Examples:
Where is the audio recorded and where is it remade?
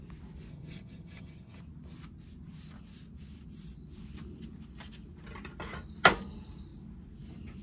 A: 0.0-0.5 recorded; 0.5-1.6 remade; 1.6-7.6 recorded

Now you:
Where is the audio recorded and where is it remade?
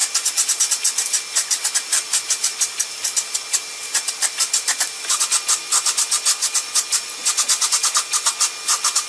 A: 0.0-5.2 remade; 5.2-9.1 recorded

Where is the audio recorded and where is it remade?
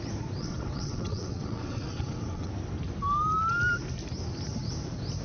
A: 0.0-0.4 recorded; 0.4-2.5 remade; 2.5-5.2 recorded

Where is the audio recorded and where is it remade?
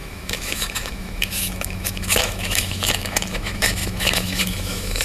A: 0.0-5.0 remade